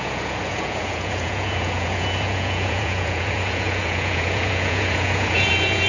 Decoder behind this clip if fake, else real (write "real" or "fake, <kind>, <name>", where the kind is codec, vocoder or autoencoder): fake, vocoder, Vocos